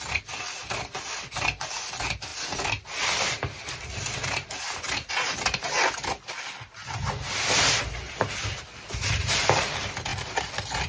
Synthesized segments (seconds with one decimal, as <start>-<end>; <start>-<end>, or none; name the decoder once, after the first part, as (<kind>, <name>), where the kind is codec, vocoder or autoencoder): none